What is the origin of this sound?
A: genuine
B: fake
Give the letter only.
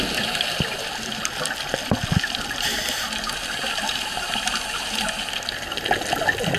A